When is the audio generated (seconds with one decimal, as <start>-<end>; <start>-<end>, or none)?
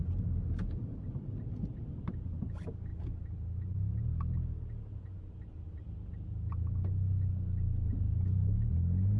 none